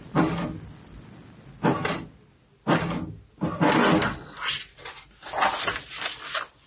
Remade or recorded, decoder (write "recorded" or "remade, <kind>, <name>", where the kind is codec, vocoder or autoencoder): recorded